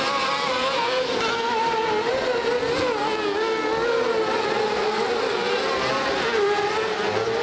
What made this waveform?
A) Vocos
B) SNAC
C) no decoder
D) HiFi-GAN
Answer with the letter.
C